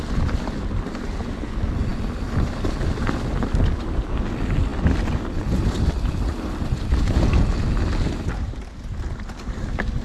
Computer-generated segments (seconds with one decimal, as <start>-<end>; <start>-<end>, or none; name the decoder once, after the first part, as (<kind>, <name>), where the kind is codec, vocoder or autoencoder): none